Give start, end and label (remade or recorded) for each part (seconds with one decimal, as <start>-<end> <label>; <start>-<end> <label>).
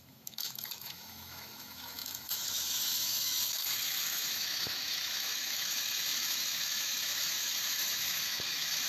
0.0-8.9 remade